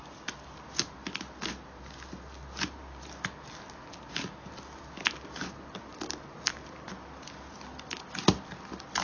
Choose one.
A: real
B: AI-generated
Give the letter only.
A